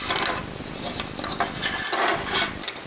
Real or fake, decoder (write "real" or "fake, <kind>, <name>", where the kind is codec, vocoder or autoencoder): real